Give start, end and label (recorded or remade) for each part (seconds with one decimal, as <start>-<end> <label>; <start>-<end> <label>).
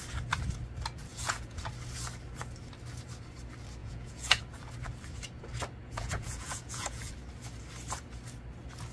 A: 0.0-1.1 recorded; 1.1-1.6 remade; 1.6-3.8 recorded; 3.8-4.4 remade; 4.4-5.8 recorded; 5.8-7.1 remade; 7.1-8.9 recorded